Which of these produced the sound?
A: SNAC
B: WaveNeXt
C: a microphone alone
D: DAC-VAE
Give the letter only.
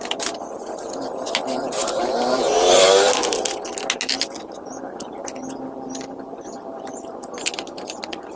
C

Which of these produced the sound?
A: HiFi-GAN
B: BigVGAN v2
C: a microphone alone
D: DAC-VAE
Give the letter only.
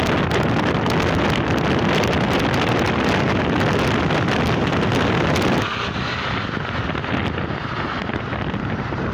C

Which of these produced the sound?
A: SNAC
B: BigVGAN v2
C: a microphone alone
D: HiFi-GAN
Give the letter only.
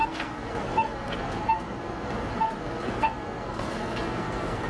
A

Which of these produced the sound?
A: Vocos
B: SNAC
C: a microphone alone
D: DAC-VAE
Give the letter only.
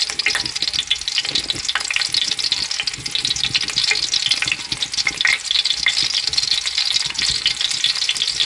C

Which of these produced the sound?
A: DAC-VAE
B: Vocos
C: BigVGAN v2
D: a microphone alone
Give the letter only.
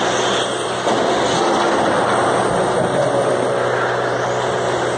D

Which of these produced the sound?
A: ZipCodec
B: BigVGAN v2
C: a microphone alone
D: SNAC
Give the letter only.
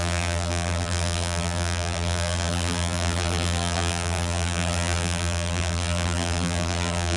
B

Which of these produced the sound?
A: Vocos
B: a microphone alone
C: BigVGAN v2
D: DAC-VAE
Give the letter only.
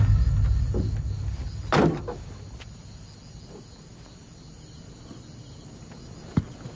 B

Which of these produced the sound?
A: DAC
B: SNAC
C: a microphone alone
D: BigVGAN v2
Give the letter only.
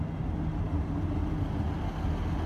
C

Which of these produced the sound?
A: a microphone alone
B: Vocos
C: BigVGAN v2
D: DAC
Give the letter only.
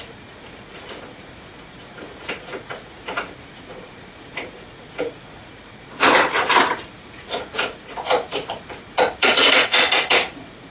B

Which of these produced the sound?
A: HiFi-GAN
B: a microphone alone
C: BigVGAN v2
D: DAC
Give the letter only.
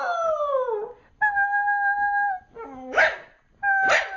B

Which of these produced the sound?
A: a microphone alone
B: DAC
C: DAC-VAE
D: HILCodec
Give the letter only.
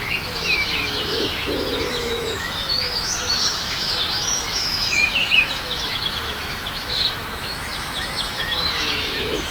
C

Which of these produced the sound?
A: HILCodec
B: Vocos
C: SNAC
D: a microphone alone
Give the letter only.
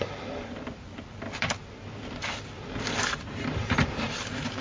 D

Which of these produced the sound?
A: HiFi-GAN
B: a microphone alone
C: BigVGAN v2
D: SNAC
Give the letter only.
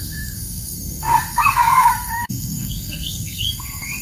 D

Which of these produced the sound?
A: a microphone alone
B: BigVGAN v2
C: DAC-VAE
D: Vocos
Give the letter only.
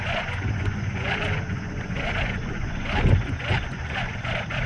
D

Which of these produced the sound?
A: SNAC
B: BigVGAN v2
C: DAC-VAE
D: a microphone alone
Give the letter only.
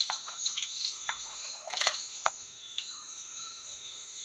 C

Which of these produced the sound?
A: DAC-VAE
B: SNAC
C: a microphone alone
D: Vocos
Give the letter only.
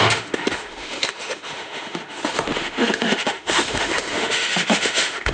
A